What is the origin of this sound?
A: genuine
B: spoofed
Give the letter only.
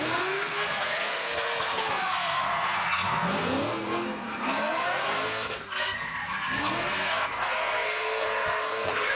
B